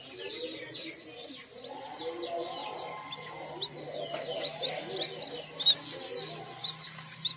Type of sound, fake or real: real